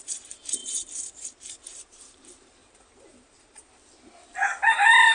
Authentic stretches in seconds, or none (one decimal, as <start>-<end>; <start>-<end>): 2.6-5.1